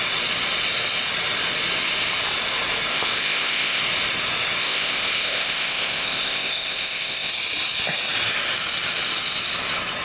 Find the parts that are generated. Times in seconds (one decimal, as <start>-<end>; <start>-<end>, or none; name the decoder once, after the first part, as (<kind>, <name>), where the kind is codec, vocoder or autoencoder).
2.9-3.8 (codec, ZipCodec); 4.6-7.3